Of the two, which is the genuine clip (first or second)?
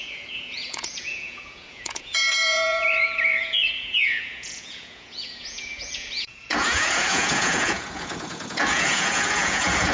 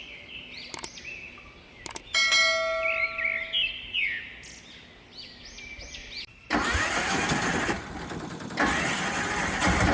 second